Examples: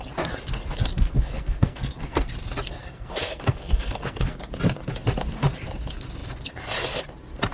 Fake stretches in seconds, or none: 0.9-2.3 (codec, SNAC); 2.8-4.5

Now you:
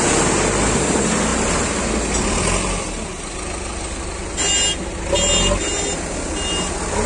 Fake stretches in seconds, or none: none